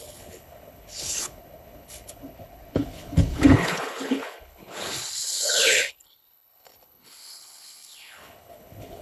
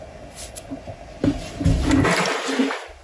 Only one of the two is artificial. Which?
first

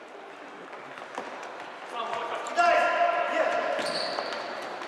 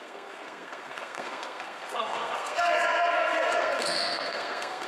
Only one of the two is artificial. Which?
second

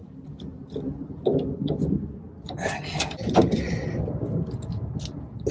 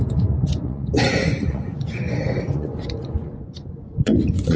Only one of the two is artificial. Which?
second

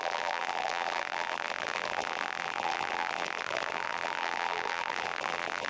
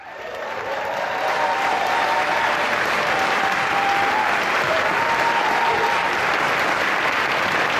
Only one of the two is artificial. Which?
first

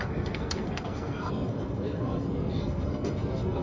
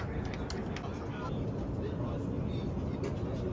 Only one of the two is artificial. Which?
first